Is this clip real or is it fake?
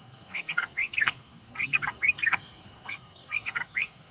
fake